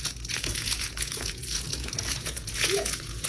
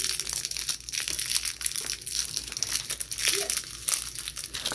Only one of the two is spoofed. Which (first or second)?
first